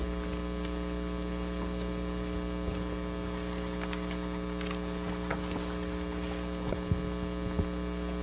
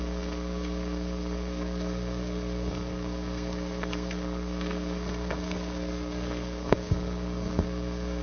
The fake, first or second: second